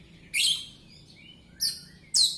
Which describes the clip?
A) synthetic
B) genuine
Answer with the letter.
B